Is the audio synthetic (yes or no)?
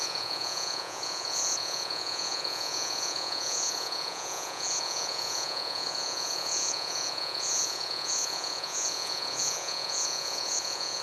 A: yes